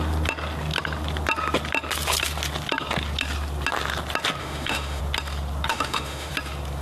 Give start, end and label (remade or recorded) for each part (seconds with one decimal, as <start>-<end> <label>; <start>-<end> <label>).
0.0-4.4 recorded; 4.4-5.0 remade; 5.0-5.7 recorded; 5.7-6.3 remade; 6.3-6.8 recorded